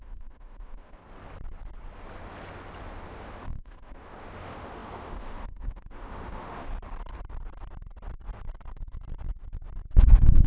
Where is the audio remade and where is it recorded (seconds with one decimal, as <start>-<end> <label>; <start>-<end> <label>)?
0.0-1.0 remade; 1.0-3.1 recorded; 3.1-6.7 remade; 6.7-10.0 recorded; 10.0-10.5 remade